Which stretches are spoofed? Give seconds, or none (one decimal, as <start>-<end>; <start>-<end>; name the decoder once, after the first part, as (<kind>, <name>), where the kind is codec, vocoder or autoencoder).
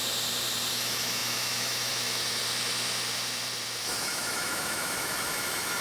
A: 0.7-2.4 (autoencoder, DAC-VAE); 3.8-5.8